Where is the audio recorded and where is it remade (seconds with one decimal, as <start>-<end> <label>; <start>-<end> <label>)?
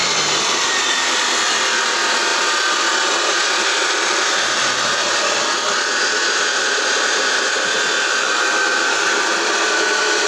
0.0-10.3 recorded